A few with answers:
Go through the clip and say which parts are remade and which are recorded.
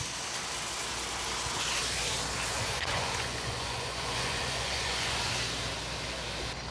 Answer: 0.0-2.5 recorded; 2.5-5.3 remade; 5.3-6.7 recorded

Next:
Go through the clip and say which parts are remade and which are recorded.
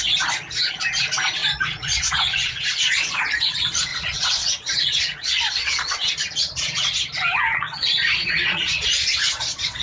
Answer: 0.0-1.4 recorded; 1.4-3.5 remade; 3.5-3.9 recorded; 3.9-6.1 remade; 6.1-7.5 recorded; 7.5-9.8 remade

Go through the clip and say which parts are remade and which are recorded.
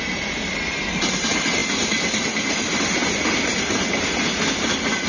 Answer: 0.0-5.1 recorded